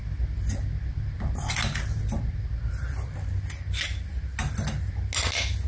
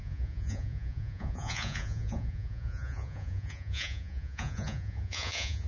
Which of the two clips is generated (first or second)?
second